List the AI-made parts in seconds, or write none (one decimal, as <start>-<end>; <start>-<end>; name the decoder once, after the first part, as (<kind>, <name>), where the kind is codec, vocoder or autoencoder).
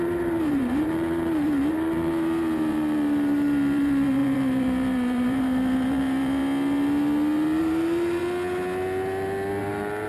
0.0-6.4 (vocoder, BigVGAN v2); 7.6-8.2; 9.6-10.1